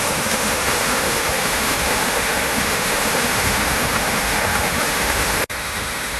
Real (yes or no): no